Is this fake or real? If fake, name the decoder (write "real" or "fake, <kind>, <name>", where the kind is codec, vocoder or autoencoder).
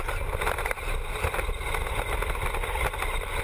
real